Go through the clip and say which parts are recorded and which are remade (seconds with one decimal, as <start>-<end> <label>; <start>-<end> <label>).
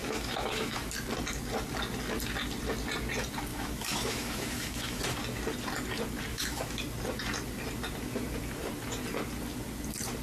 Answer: 0.0-0.9 remade; 0.9-3.5 recorded; 3.5-5.0 remade; 5.0-6.3 recorded; 6.3-6.8 remade; 6.8-10.2 recorded